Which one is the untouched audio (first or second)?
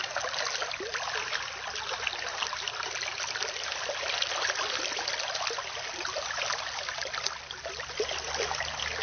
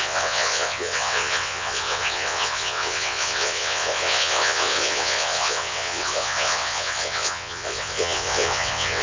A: first